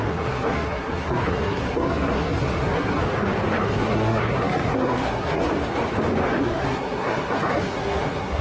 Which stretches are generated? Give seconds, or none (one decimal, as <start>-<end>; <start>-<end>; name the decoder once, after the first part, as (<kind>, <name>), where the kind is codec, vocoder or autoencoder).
0.0-3.0 (codec, SNAC); 3.6-5.5; 6.4-8.4